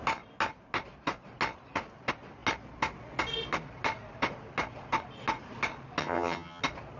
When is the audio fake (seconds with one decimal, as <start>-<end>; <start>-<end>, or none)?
6.0-6.6